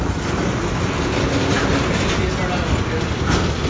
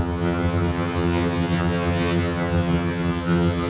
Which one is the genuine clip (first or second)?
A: first